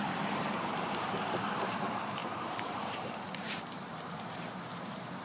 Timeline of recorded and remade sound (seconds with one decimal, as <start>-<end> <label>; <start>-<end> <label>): 0.0-5.2 remade